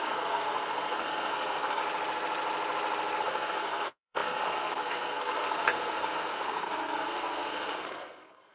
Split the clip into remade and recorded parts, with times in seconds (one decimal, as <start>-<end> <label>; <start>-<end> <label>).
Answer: 0.0-1.8 remade; 1.8-3.2 recorded; 3.2-8.5 remade